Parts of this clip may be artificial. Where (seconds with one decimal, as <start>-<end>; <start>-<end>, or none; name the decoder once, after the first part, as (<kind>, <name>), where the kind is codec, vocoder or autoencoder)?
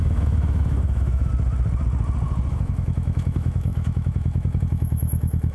0.0-1.3 (autoencoder, DAC-VAE); 2.5-5.5